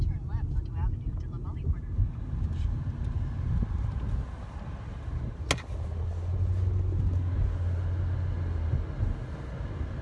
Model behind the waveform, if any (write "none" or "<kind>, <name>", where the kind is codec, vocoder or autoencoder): none